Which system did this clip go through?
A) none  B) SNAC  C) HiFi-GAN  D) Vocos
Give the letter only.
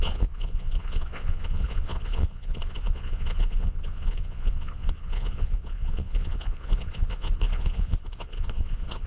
D